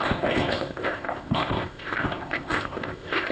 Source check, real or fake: fake